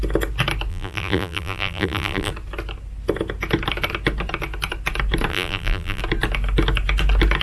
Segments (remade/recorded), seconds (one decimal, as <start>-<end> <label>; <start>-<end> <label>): 0.0-0.7 recorded; 0.7-2.3 remade; 2.3-5.3 recorded; 5.3-6.0 remade; 6.0-7.4 recorded